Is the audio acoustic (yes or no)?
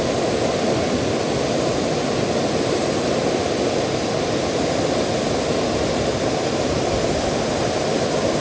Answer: yes